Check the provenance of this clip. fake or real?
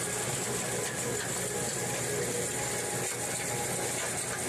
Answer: real